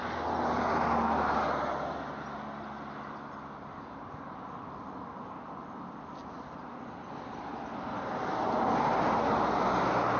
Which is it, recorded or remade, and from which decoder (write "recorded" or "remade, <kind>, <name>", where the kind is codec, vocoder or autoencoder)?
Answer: recorded